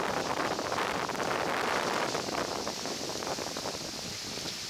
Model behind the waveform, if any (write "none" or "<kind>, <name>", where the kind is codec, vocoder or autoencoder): none